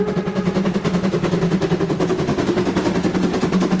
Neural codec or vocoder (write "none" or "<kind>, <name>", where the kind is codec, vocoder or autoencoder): none